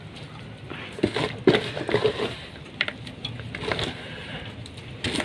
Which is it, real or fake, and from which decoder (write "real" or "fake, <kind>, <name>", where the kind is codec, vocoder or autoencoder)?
real